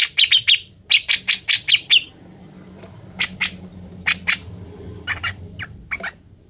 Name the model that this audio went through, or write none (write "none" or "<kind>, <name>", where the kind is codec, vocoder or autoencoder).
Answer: none